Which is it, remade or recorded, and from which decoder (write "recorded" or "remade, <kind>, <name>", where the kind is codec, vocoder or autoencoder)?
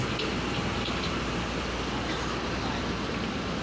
recorded